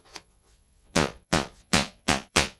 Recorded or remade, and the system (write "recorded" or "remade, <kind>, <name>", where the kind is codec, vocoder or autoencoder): remade, vocoder, Vocos